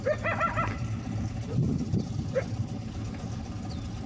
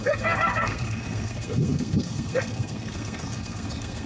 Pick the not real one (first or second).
second